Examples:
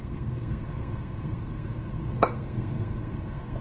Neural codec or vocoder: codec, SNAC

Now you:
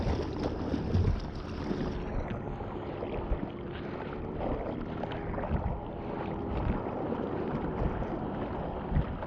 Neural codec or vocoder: none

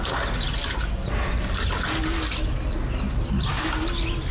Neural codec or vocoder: none